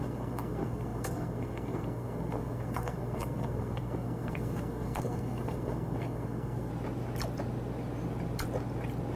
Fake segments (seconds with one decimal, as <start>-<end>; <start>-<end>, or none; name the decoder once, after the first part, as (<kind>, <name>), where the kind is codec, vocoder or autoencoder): 0.0-6.7 (codec, SNAC)